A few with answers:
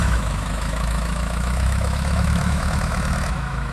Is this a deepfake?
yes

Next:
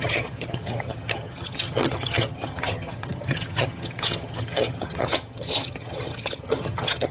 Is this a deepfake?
yes